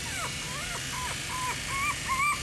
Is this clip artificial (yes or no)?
no